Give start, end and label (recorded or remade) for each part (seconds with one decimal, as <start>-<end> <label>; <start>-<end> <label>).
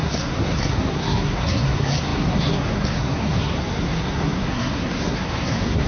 0.0-5.9 remade